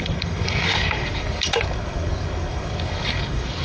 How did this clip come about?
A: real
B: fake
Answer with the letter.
B